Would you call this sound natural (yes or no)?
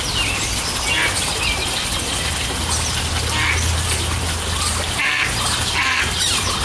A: yes